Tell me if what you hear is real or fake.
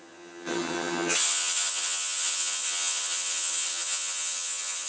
fake